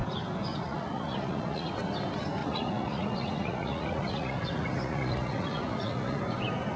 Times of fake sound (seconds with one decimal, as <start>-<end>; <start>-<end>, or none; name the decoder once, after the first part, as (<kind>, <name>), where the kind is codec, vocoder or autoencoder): 0.5-1.7 (vocoder, Vocos); 2.4-6.2